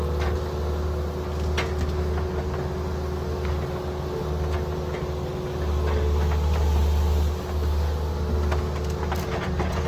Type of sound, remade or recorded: recorded